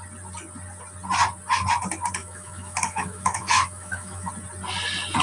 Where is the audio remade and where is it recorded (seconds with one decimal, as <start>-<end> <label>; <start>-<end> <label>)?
0.0-2.2 recorded; 2.2-4.3 remade; 4.3-5.2 recorded